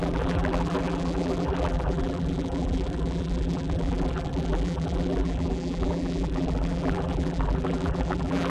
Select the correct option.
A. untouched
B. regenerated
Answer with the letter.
B